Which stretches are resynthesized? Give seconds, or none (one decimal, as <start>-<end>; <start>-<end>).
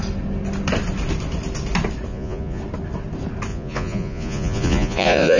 2.1-2.6; 3.5-5.4